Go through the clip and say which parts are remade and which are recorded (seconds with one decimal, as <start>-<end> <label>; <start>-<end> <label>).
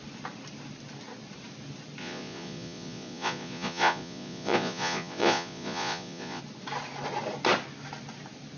0.0-2.0 recorded; 2.0-6.4 remade; 6.4-8.6 recorded